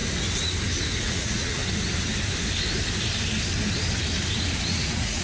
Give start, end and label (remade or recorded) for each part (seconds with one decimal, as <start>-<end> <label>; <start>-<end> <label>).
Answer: 0.0-1.0 recorded; 1.0-1.6 remade; 1.6-4.7 recorded; 4.7-5.2 remade